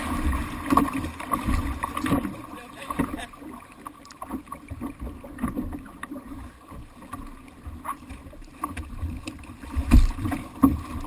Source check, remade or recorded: recorded